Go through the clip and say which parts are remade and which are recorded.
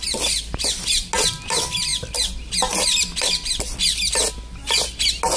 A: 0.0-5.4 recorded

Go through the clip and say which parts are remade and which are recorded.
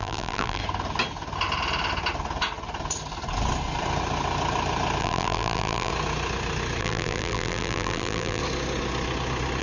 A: 0.0-0.6 remade; 0.6-5.0 recorded; 5.0-5.9 remade; 5.9-6.8 recorded; 6.8-8.4 remade; 8.4-9.6 recorded